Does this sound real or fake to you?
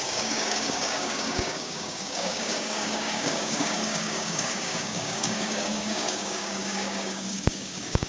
fake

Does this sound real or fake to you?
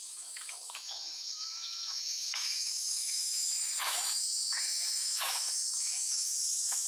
fake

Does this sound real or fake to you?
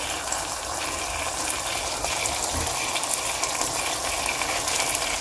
real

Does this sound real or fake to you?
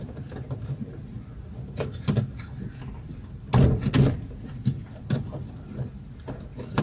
real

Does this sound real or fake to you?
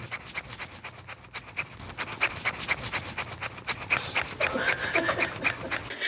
real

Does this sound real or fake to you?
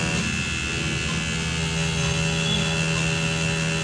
real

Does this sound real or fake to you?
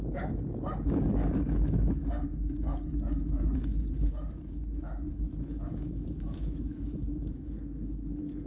fake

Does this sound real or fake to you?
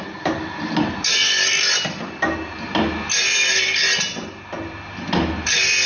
real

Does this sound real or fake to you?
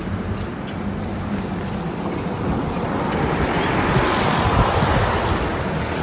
real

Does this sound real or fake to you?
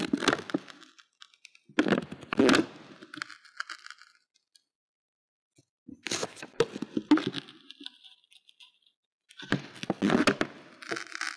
real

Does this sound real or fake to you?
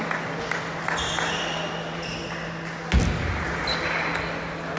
real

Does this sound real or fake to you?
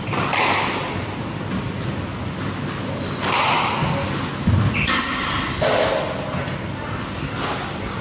real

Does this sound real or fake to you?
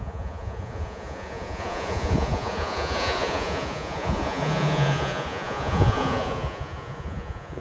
fake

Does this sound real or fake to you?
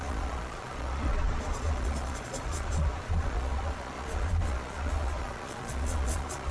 fake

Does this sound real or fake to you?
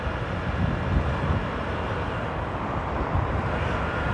real